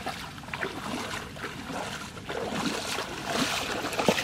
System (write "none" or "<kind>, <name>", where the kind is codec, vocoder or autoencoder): none